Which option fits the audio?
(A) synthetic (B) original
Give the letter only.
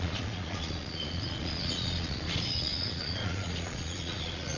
A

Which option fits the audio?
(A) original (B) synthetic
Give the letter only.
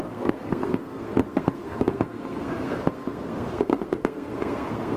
B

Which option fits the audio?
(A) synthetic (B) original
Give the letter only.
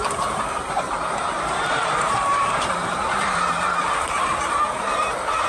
A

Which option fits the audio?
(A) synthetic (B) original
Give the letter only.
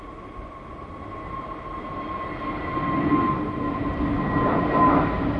B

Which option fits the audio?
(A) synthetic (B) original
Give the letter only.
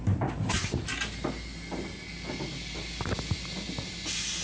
B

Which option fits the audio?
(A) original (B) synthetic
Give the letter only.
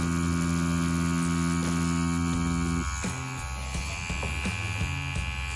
A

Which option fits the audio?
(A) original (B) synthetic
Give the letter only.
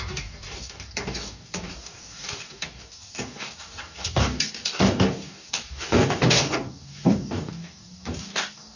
B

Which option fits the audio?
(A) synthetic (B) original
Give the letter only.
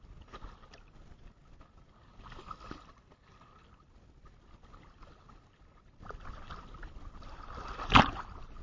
B